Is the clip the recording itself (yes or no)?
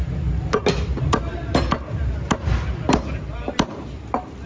yes